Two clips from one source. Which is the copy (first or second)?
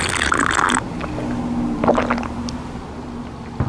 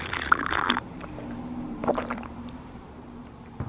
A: second